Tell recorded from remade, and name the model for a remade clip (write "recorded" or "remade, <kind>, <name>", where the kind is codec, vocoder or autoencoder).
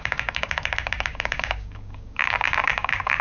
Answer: remade, codec, DAC